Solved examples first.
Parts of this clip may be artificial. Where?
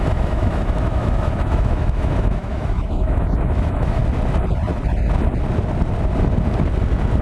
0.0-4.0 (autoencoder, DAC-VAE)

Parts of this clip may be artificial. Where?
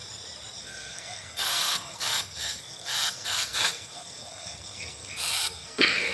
0.6-6.1 (codec, SNAC)